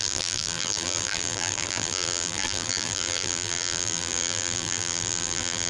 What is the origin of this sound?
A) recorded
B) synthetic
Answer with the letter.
B